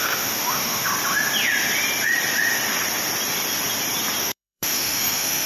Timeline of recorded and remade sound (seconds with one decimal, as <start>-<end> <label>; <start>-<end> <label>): 0.0-0.9 remade; 0.9-4.2 recorded; 4.2-5.5 remade